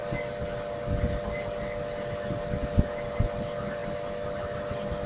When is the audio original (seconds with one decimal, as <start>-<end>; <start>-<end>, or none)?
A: 0.0-5.1